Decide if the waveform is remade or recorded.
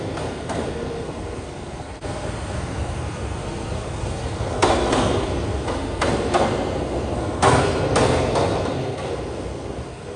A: remade